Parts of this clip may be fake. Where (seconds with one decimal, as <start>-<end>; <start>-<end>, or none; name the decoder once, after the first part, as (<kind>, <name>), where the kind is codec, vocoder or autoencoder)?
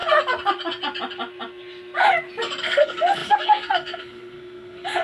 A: 2.6-5.0 (codec, SNAC)